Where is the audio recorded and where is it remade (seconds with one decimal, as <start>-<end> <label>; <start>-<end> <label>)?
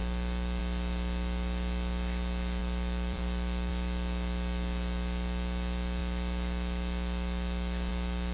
0.0-0.6 remade; 0.6-2.6 recorded; 2.6-3.7 remade; 3.7-8.3 recorded